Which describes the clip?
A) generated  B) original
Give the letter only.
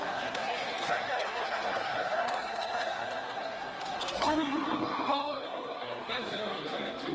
A